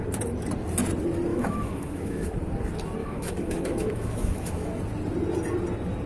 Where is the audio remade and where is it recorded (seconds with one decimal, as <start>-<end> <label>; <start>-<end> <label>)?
0.0-1.3 recorded; 1.3-2.3 remade; 2.3-3.0 recorded; 3.0-4.8 remade; 4.8-6.1 recorded